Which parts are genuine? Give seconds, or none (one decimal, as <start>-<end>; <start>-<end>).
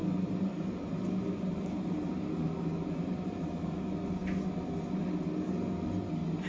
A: 3.8-6.5